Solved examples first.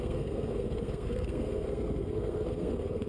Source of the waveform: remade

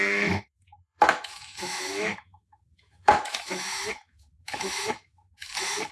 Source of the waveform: remade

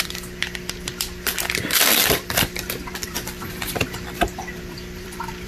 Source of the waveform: remade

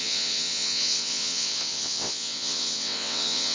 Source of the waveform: remade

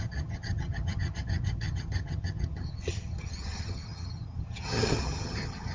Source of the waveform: remade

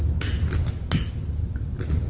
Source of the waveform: recorded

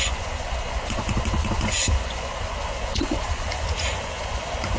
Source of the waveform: remade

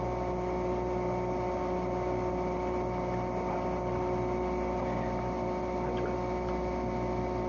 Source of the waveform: recorded